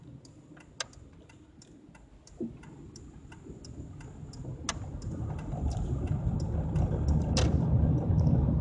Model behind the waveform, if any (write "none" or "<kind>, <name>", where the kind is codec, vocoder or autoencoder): none